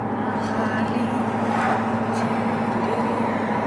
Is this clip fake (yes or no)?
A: no